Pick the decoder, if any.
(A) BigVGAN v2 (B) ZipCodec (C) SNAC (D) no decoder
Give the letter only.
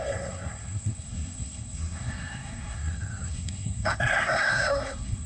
C